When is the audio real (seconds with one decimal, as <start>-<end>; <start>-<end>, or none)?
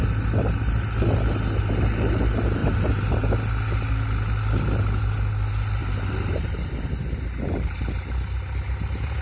0.0-2.6; 3.3-5.8; 6.9-9.2